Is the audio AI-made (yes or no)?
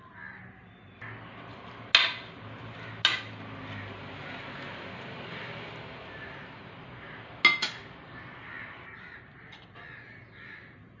no